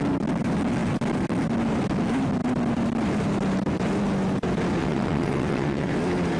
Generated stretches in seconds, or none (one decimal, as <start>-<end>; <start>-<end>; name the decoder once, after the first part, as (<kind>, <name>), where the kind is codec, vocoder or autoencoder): 4.8-5.9 (vocoder, WaveNeXt)